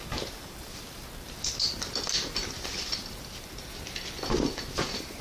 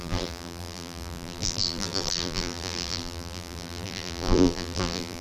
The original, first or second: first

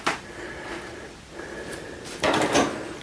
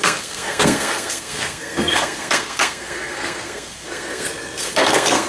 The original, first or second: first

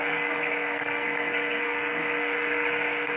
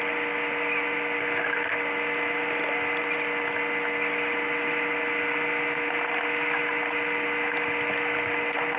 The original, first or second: second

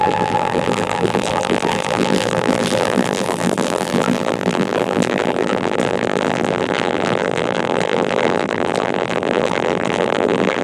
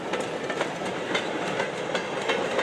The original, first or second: second